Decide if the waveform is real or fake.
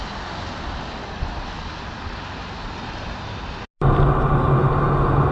real